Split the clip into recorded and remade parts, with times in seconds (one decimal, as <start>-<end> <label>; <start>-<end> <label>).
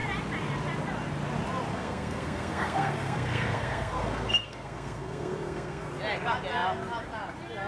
0.0-1.7 recorded; 1.7-5.9 remade; 5.9-7.7 recorded